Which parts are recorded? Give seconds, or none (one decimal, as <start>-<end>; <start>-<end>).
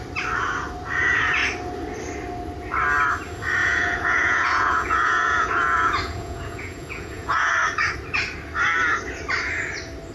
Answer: 0.0-3.6; 7.5-10.1